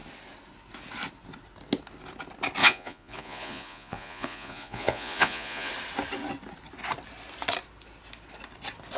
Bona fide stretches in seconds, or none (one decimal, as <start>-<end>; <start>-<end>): 0.0-2.6; 5.7-9.0